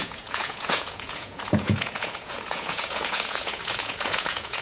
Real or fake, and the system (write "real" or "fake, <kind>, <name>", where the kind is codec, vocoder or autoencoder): fake, vocoder, Vocos